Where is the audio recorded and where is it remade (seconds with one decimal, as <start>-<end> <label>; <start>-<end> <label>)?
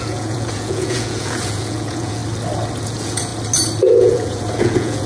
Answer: 0.0-2.2 remade; 2.2-2.8 recorded; 2.8-3.3 remade; 3.3-3.8 recorded; 3.8-5.1 remade